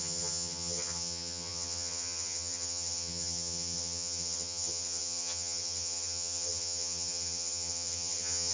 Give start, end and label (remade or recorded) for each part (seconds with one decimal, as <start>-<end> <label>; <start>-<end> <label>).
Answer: 0.0-8.5 remade